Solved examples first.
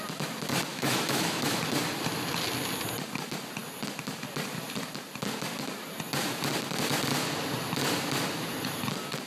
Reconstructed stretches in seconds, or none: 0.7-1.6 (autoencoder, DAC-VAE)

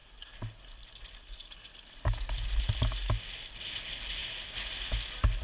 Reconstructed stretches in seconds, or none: none

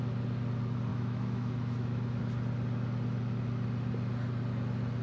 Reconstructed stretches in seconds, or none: 0.9-2.2 (autoencoder, DAC-VAE)